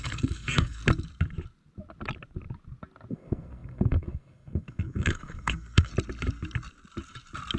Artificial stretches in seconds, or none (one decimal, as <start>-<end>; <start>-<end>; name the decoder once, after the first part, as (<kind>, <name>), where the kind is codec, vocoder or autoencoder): 0.0-0.8 (codec, SNAC); 3.1-5.9